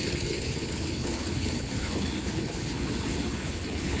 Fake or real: fake